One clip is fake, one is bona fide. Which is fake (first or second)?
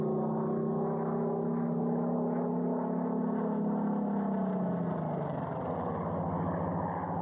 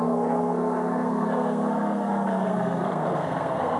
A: second